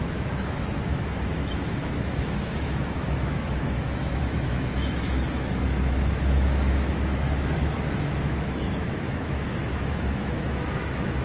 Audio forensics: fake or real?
fake